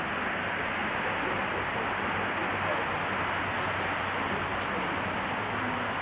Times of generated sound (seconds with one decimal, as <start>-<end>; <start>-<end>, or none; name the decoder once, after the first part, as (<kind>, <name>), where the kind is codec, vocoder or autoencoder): none